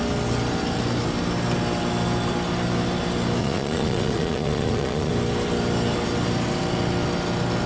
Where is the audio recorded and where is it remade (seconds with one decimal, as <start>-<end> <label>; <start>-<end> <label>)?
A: 0.0-3.4 recorded; 3.4-5.1 remade; 5.1-7.7 recorded